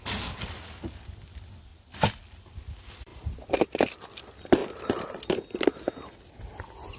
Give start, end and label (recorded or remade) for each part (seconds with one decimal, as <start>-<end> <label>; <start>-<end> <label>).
0.0-3.1 recorded; 3.1-4.0 remade; 4.0-7.0 recorded